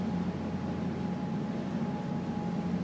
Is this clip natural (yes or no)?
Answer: yes